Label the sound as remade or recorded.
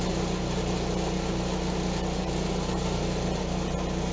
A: recorded